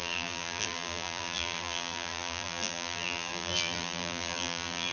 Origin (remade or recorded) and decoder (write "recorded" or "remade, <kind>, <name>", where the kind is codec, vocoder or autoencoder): remade, vocoder, BigVGAN v2